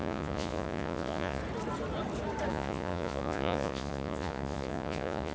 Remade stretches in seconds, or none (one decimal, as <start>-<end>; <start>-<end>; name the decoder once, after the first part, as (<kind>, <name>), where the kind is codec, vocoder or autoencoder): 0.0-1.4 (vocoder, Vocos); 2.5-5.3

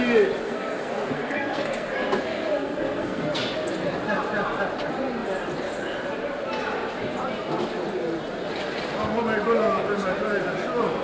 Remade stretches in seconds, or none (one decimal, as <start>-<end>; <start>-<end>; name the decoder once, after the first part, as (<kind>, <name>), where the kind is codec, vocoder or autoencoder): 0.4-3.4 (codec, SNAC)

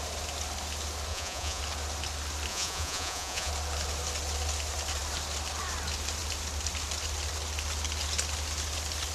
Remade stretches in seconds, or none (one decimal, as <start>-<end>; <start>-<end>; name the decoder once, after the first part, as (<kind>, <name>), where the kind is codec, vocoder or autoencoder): 1.1-1.6 (vocoder, Vocos); 2.5-3.5

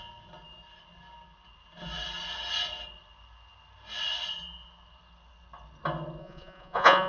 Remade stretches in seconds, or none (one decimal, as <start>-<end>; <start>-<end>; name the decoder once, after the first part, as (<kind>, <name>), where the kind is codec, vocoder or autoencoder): 6.2-7.1 (vocoder, Vocos)

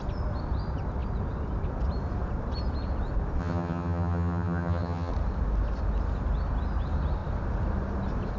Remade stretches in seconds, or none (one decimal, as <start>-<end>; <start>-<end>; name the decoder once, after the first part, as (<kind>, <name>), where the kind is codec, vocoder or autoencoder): 3.4-5.1 (vocoder, HiFi-GAN)